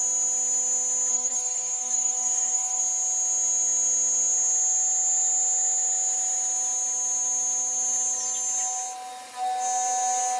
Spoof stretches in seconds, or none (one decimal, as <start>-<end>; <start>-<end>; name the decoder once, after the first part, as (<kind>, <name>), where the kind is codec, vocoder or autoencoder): 1.1-2.8 (codec, SNAC)